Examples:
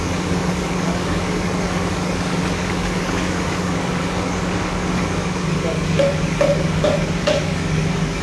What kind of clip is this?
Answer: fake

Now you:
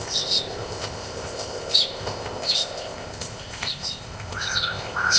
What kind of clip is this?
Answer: fake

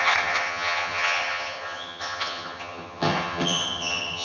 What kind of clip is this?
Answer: fake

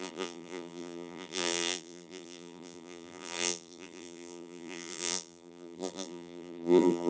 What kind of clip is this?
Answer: fake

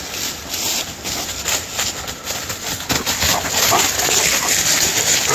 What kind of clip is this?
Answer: real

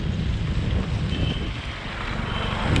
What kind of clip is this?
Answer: real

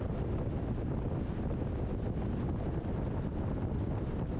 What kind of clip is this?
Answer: real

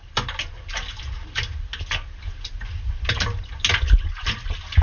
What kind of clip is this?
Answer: real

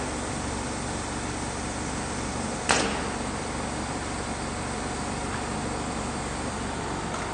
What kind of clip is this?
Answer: real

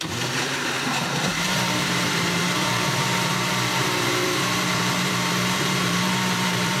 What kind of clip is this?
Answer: fake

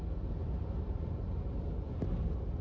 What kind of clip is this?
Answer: real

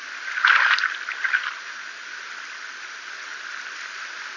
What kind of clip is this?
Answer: real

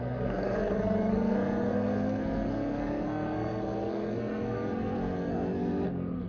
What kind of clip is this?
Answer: fake